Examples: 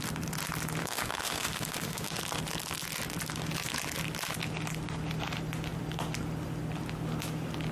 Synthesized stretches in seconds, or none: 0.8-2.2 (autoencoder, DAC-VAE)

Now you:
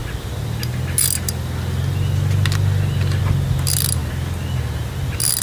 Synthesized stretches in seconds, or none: none

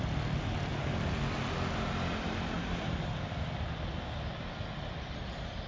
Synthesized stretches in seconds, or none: none

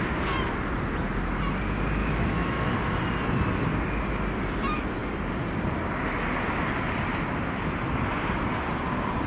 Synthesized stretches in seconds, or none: 2.0-2.7 (autoencoder, DAC-VAE)

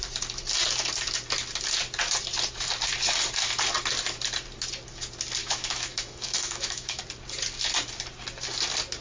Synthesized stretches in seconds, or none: 5.4-7.0 (autoencoder, DAC-VAE)